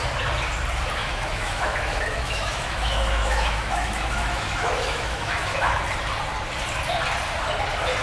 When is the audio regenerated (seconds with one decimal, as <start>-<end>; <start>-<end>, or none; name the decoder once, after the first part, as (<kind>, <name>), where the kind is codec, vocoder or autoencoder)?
1.0-5.8 (autoencoder, DAC-VAE)